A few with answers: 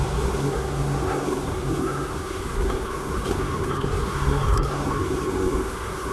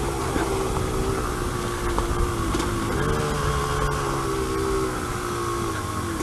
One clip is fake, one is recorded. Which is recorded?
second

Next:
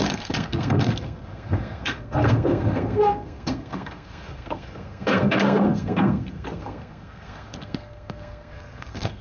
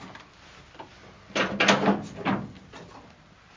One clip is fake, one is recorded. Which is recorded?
second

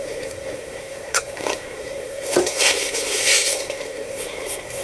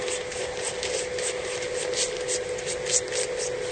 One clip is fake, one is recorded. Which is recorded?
second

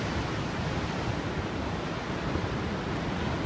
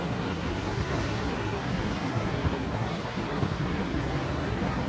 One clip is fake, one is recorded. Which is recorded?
first